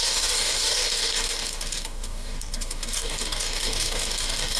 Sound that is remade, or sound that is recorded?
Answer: remade